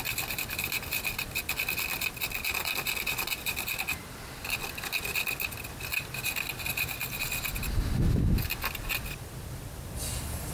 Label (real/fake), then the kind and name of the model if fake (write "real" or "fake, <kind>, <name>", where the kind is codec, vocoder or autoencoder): real